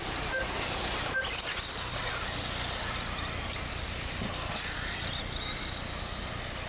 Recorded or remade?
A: recorded